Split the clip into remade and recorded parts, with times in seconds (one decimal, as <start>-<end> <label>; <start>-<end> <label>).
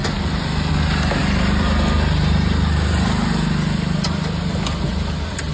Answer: 0.0-0.7 remade; 0.7-5.5 recorded